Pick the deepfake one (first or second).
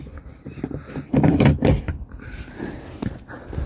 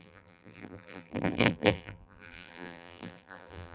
second